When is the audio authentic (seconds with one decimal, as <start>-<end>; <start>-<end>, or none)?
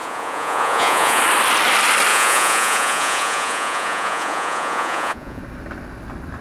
1.2-2.1; 5.4-6.4